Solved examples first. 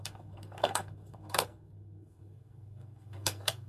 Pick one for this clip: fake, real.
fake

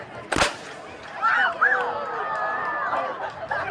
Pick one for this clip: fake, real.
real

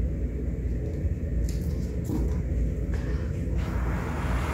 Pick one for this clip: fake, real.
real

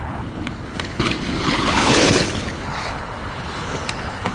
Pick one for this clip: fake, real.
fake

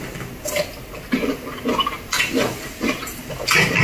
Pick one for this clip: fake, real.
real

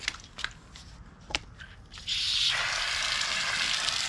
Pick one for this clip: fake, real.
real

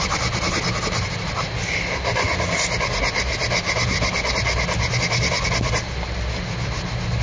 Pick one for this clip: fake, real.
real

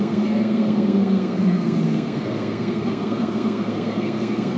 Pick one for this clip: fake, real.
fake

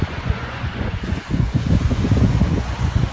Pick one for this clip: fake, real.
fake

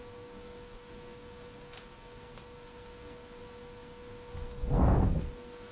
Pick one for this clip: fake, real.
fake